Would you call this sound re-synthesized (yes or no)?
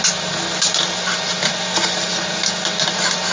no